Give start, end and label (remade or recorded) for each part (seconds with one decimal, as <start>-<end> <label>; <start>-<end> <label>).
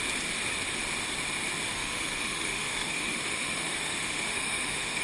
0.0-1.7 recorded; 1.7-5.0 remade